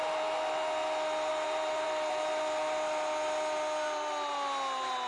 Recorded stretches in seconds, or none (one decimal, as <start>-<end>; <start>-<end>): 0.0-1.3; 2.4-5.1